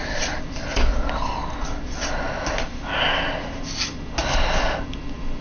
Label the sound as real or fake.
real